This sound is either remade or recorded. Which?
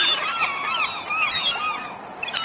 recorded